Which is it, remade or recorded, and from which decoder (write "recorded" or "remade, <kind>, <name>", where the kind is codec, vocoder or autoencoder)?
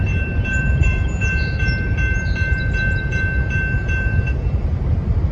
remade, vocoder, BigVGAN v2